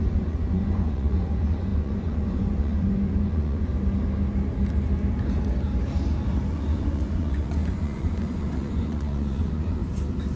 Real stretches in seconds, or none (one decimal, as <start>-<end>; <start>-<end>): 3.7-6.5; 9.8-10.4